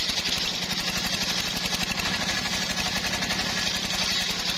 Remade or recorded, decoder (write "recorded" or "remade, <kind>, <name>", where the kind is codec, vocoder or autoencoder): recorded